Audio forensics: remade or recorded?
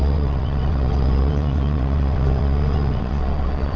remade